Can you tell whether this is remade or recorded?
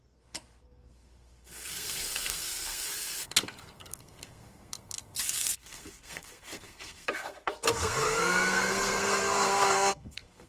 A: remade